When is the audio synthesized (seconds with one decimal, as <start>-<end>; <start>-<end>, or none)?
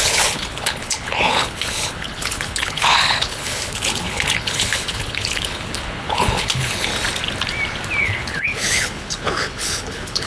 0.0-6.9; 8.0-10.3